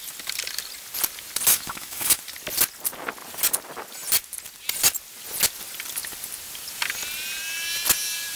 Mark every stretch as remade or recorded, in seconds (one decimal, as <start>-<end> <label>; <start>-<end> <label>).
0.0-1.5 recorded; 1.5-2.2 remade; 2.2-8.4 recorded